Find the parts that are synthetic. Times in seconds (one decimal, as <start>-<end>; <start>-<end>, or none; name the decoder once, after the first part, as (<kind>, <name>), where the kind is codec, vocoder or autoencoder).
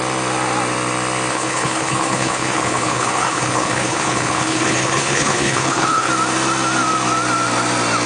1.3-6.1 (codec, HILCodec)